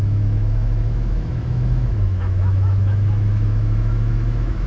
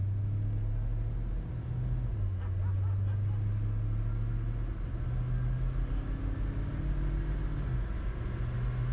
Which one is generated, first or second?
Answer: first